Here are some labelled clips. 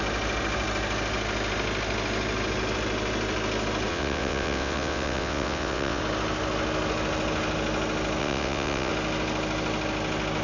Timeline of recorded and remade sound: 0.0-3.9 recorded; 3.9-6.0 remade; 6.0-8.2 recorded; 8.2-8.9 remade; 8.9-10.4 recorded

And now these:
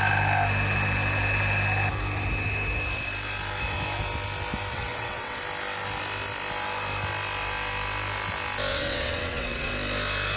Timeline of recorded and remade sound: 0.0-4.7 recorded; 4.7-5.4 remade; 5.4-8.7 recorded; 8.7-9.7 remade; 9.7-10.4 recorded